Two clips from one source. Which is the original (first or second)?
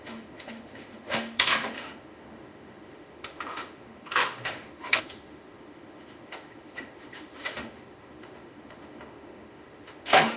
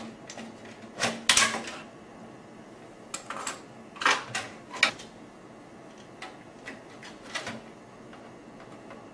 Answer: second